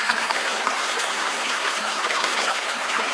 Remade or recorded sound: remade